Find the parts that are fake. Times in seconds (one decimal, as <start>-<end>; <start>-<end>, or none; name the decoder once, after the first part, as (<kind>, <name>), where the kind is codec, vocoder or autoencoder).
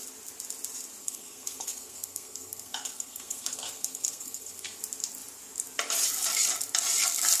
1.0-4.8 (codec, SNAC)